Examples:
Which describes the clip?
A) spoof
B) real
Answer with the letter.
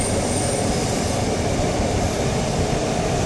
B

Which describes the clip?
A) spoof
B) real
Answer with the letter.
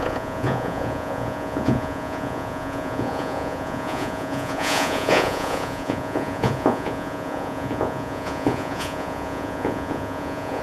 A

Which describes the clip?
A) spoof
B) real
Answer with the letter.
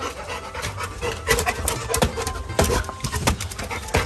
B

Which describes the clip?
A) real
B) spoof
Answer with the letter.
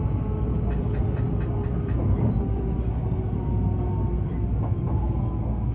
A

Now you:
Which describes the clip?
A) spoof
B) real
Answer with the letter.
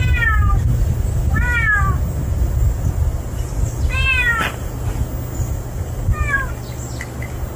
B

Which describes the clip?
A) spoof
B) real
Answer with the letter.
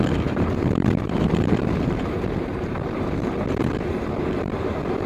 A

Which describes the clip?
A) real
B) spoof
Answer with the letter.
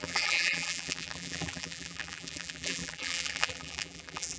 B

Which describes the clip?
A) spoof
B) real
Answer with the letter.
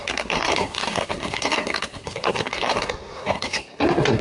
A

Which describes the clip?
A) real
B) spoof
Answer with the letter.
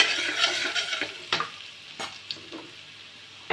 A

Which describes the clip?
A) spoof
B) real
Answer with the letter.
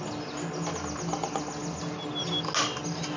B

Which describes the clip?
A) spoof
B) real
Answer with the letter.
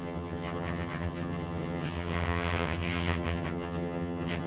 A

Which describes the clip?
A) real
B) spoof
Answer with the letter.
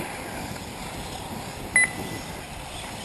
A